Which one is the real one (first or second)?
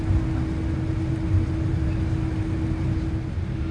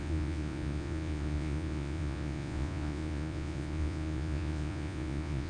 first